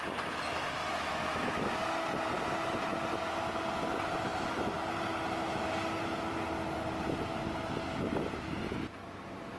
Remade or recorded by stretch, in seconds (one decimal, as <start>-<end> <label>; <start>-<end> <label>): 0.0-0.9 recorded; 0.9-1.7 remade; 1.7-9.6 recorded